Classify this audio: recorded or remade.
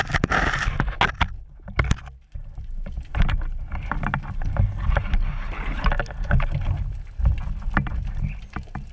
recorded